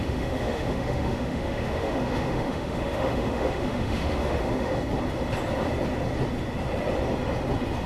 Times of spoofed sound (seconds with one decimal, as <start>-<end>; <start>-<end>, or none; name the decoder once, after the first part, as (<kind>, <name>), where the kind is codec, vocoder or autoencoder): 0.0-4.7 (autoencoder, DAC-VAE)